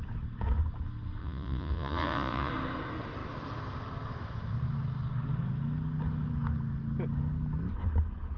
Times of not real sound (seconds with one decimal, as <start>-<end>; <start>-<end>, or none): 1.2-2.5